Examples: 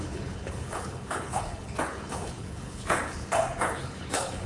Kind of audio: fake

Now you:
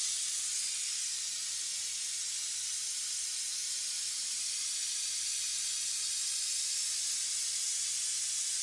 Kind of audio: real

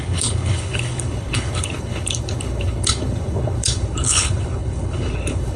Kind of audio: fake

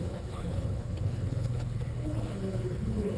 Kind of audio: fake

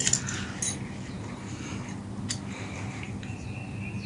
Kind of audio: real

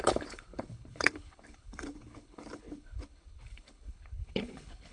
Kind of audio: fake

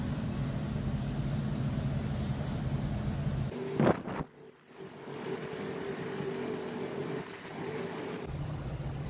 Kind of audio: real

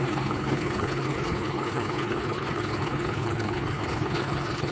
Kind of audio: fake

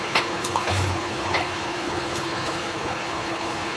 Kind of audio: fake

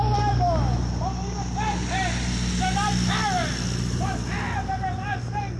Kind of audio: real